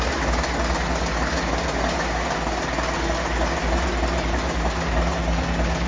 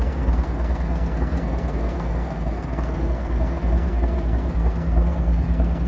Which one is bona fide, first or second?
first